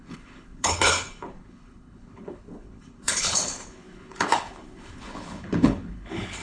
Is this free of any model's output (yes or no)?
no